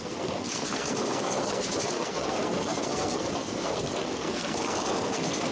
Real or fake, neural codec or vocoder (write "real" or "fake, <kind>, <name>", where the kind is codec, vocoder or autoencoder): fake, codec, SNAC